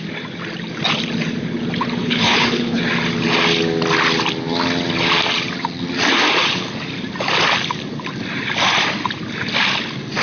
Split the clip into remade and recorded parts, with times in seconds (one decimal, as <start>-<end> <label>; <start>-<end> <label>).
0.0-2.0 recorded; 2.0-2.8 remade; 2.8-10.2 recorded